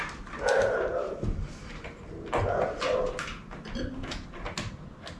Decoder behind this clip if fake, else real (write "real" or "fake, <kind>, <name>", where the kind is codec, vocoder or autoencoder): real